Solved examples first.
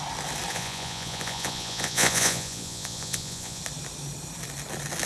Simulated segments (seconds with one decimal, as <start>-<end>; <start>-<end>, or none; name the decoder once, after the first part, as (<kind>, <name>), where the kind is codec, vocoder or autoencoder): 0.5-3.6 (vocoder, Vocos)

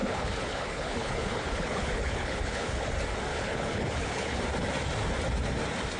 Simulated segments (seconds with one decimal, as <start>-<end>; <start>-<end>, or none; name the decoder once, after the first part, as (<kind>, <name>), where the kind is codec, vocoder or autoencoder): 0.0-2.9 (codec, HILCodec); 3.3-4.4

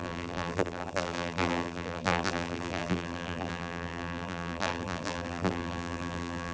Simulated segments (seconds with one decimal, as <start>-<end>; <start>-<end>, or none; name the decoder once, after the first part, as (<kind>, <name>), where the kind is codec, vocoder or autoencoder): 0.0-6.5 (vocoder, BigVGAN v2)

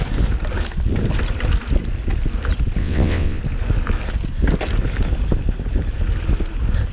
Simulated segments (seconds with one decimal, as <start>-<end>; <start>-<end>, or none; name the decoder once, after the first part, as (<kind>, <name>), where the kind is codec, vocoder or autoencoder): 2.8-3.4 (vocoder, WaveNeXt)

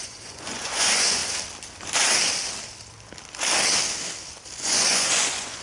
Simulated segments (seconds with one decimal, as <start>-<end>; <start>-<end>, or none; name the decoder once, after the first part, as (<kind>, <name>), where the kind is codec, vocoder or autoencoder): 0.0-1.2 (vocoder, Vocos); 4.6-5.6

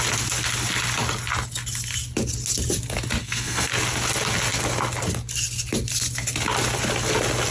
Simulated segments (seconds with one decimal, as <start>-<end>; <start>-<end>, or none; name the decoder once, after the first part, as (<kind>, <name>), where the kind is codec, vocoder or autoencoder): 3.2-3.7 (codec, SNAC)